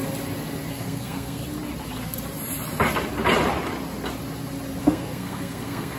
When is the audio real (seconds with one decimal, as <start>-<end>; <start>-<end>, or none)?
0.0-0.7; 1.4-4.8